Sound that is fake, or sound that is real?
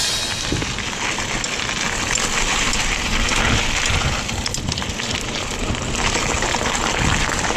real